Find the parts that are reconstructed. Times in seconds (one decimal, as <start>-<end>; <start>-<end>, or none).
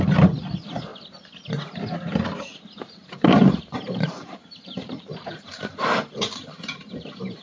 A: 3.0-7.4